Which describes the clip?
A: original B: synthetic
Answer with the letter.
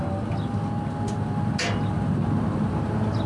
A